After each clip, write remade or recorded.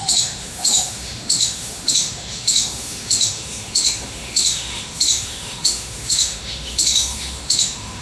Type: remade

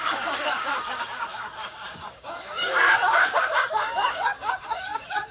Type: remade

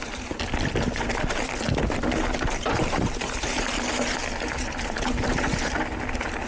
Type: recorded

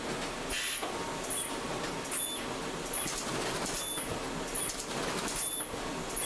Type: recorded